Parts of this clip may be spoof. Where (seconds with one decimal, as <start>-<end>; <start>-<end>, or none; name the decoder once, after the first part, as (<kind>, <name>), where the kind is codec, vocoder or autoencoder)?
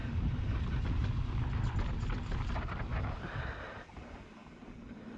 none